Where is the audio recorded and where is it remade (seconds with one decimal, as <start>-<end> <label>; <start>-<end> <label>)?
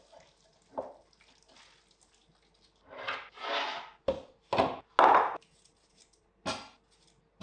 0.0-7.4 recorded